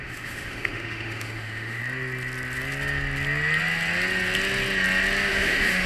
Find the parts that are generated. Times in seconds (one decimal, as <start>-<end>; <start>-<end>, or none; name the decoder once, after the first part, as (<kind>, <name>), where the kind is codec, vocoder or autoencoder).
0.0-1.8 (autoencoder, DAC-VAE); 5.3-5.9